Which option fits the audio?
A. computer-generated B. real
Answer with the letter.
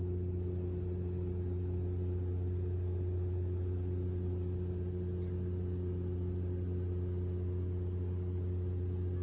B